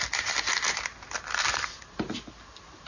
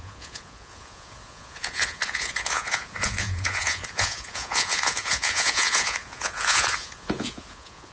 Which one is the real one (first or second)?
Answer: first